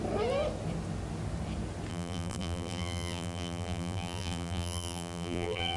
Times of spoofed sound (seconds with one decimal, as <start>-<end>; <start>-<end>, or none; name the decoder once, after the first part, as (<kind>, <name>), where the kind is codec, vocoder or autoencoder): 1.9-5.8 (vocoder, BigVGAN v2)